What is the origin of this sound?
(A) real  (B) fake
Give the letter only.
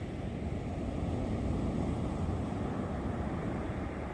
A